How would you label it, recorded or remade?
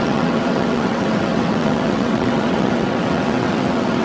remade